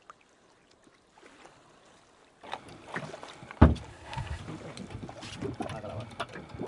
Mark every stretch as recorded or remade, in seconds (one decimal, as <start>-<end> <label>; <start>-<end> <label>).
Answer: 0.0-3.9 recorded; 3.9-4.4 remade; 4.4-6.7 recorded